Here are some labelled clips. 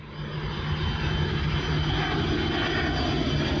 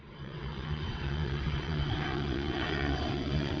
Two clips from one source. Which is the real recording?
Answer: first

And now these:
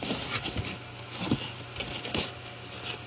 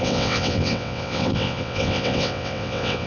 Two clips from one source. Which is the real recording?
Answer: first